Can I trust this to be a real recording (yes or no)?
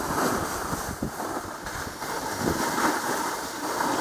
yes